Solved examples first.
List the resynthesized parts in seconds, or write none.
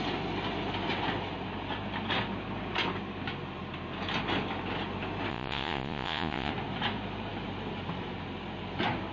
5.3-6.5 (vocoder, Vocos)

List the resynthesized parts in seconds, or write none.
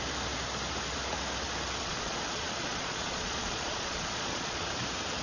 1.8-4.7 (vocoder, Vocos)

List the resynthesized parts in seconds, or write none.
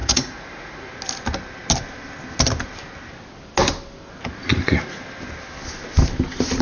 0.0-0.9 (vocoder, Vocos)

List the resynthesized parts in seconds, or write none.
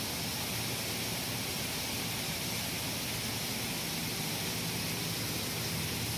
none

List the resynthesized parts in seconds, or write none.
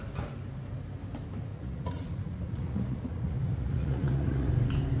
1.5-4.5 (vocoder, Vocos)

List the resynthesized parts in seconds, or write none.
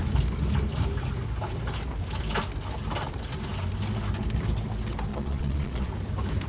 5.1-5.9 (vocoder, Vocos)